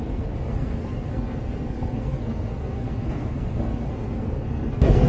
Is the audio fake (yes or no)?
yes